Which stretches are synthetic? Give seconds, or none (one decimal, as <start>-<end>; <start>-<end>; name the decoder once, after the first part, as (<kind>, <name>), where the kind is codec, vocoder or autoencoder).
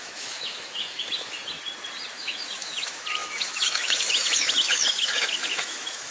0.0-1.4 (autoencoder, DAC-VAE); 2.1-6.1